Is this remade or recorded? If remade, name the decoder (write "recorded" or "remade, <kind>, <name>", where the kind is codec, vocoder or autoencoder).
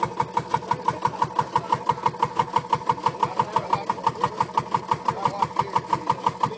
recorded